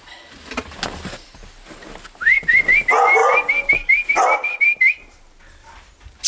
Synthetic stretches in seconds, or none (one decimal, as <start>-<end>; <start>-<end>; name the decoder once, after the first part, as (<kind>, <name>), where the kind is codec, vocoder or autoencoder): none